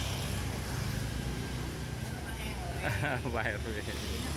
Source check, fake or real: real